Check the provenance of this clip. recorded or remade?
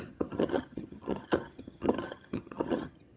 remade